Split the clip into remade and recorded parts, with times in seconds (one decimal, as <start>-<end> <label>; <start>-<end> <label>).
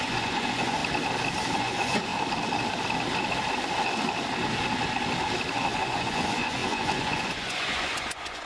0.0-0.8 remade; 0.8-1.6 recorded; 1.6-2.1 remade; 2.1-5.7 recorded; 5.7-8.5 remade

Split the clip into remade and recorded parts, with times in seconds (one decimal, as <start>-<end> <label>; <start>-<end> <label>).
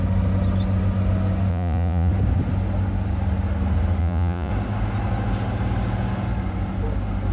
0.0-1.5 recorded; 1.5-2.1 remade; 2.1-4.0 recorded; 4.0-4.5 remade; 4.5-7.3 recorded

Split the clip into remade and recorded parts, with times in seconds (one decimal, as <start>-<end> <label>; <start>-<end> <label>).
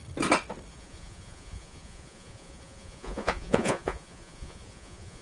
0.0-0.7 recorded; 0.7-5.2 remade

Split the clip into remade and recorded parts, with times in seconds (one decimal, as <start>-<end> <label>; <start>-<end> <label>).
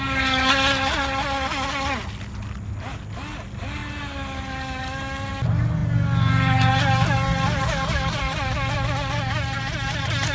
0.0-10.3 recorded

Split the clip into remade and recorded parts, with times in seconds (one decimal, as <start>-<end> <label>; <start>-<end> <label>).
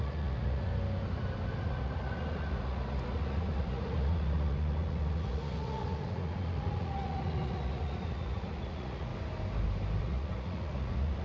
0.0-0.7 remade; 0.7-1.6 recorded; 1.6-9.1 remade; 9.1-10.0 recorded; 10.0-11.2 remade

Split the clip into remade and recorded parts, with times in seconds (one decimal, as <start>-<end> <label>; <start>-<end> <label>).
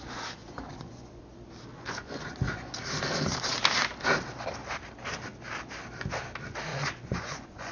0.0-0.4 recorded; 0.4-1.2 remade; 1.2-1.7 recorded; 1.7-2.7 remade; 2.7-6.7 recorded; 6.7-7.7 remade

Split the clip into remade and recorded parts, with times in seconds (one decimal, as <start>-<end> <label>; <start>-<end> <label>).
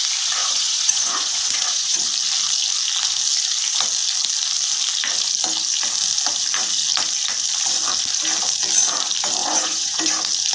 0.0-0.4 recorded; 0.4-2.0 remade; 2.0-9.4 recorded; 9.4-10.1 remade; 10.1-10.5 recorded